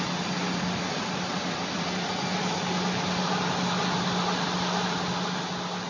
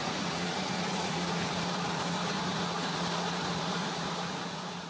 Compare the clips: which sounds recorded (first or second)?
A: first